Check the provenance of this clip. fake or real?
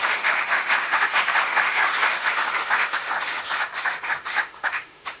fake